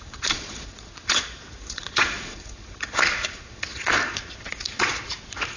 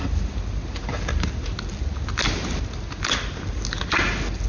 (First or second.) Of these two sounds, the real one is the second